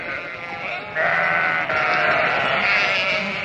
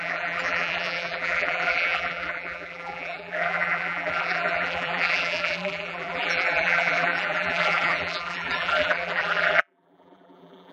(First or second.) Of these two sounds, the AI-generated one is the second